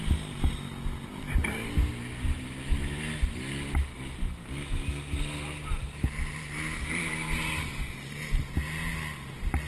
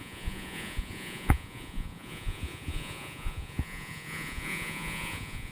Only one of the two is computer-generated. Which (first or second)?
second